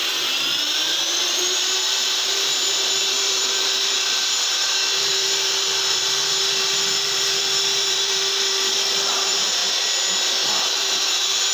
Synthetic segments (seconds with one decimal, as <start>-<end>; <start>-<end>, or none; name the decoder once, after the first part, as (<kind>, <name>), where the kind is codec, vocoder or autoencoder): 0.6-9.6 (vocoder, BigVGAN v2); 10.7-11.5